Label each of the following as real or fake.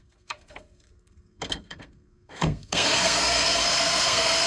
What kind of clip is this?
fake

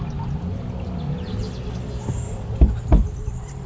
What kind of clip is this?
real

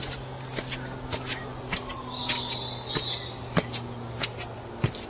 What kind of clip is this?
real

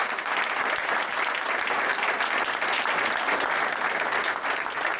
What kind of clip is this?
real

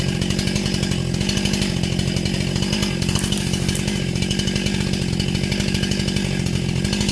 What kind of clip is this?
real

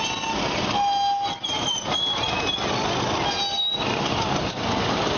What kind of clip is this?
real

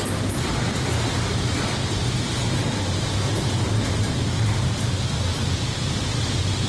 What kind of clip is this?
real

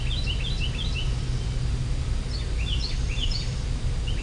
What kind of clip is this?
real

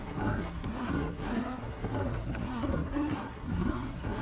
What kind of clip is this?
fake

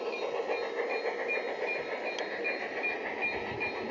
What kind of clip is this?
real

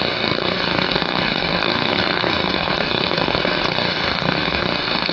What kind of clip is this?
fake